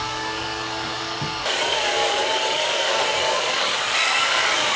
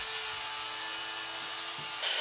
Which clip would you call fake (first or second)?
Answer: first